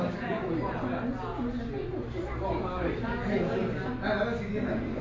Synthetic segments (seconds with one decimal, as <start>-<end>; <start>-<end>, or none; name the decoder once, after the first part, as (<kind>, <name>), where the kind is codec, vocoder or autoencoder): 0.0-0.4 (codec, DAC); 2.0-3.6; 4.5-5.0